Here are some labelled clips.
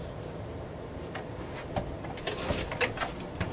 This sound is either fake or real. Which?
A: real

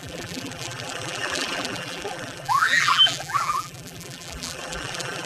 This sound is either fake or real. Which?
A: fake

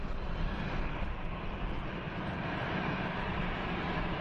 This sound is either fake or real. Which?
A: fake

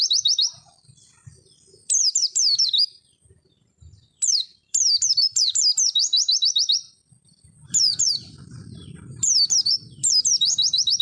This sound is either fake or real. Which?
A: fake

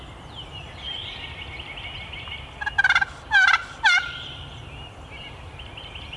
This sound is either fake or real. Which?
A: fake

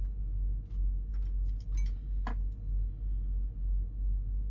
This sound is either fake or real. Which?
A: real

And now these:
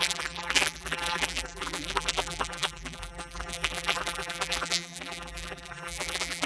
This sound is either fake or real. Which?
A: fake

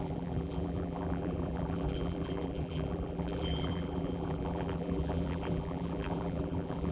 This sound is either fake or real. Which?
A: fake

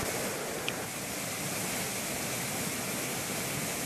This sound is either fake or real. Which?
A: real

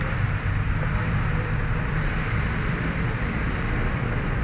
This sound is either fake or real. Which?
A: fake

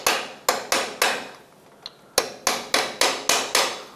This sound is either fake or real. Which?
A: real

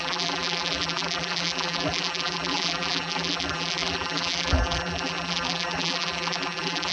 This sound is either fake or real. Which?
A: fake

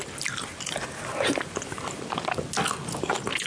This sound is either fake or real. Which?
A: real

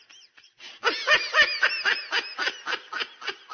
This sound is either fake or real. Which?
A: real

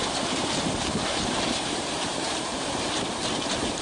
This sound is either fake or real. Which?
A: fake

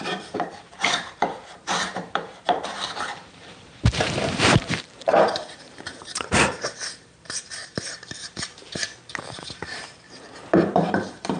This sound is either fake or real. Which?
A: fake